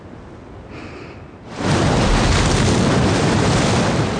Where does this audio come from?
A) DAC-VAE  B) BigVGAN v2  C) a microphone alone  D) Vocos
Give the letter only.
C